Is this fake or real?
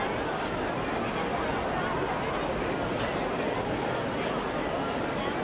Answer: real